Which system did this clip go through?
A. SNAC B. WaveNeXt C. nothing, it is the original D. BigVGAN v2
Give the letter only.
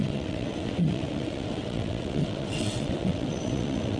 B